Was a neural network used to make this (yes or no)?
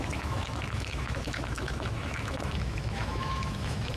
yes